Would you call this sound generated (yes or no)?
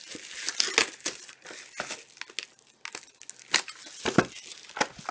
no